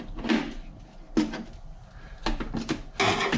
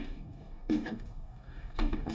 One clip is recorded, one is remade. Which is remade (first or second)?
second